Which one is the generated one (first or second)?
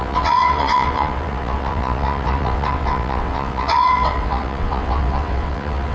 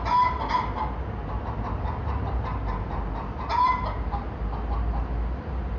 first